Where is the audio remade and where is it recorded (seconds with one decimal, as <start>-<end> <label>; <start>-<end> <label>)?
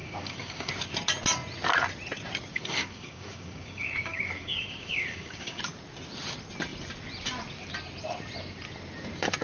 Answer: 0.0-0.7 remade; 0.7-2.5 recorded; 2.5-5.6 remade; 5.6-9.4 recorded